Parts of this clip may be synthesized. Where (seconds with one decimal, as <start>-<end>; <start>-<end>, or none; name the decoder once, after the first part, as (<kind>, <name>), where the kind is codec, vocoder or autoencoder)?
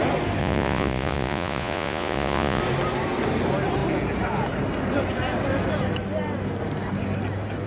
0.4-2.6 (vocoder, Vocos)